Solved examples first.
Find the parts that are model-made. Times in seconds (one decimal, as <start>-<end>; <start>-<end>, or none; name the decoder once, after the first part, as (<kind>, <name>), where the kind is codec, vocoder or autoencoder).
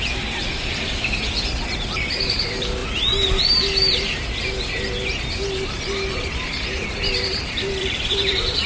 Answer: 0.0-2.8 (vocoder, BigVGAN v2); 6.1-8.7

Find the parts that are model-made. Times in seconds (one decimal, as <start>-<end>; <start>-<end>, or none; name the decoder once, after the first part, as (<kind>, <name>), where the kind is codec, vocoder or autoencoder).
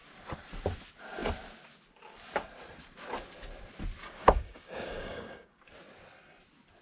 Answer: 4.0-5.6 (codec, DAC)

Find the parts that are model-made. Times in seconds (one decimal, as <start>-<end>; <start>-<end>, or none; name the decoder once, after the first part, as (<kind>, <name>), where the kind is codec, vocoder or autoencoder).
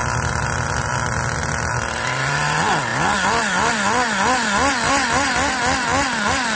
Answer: none